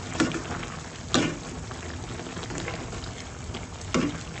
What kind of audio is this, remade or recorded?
recorded